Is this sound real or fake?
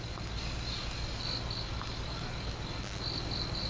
real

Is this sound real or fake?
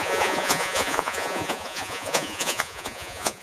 fake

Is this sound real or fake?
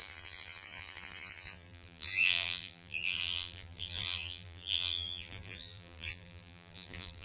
fake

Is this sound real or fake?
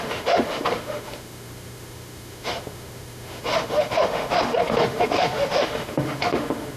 fake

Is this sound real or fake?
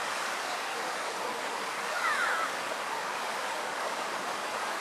fake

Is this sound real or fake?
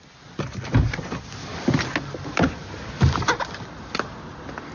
real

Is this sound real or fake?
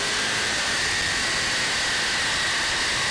real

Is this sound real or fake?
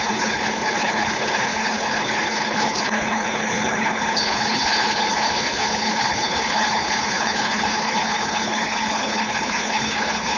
fake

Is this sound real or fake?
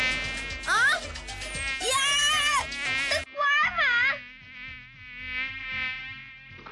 real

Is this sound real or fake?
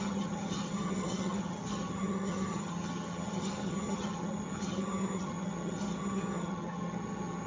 fake